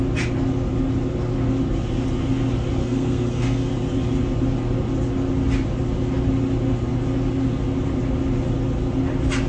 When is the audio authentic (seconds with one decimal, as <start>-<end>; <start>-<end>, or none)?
0.0-2.8; 3.7-9.5